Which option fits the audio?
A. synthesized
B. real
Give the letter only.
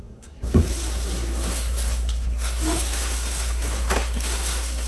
A